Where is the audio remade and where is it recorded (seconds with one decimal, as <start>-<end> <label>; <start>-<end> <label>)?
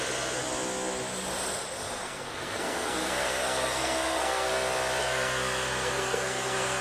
0.0-2.0 recorded; 2.0-4.5 remade; 4.5-5.0 recorded; 5.0-6.8 remade